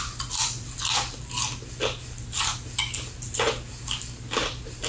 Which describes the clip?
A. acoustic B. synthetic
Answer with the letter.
A